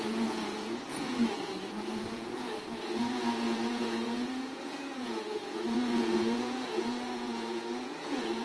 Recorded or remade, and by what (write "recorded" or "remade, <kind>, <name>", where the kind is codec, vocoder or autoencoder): remade, vocoder, Vocos